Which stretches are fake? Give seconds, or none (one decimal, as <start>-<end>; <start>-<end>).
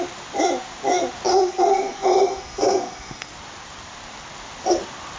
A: 1.3-3.3